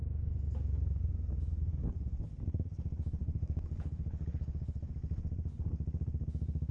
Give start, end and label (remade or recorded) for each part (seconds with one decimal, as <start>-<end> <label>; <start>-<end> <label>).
0.0-1.7 recorded; 1.7-2.3 remade; 2.3-3.2 recorded; 3.2-4.9 remade; 4.9-6.7 recorded